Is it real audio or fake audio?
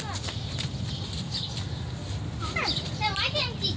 real